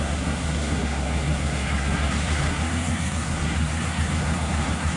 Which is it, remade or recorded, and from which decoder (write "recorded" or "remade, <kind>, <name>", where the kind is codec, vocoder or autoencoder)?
remade, codec, SNAC